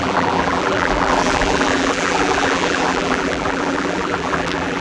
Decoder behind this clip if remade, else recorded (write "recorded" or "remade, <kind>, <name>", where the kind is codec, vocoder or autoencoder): remade, vocoder, BigVGAN v2